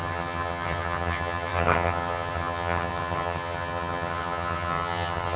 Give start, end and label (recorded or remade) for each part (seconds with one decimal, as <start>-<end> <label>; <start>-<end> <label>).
0.0-5.4 remade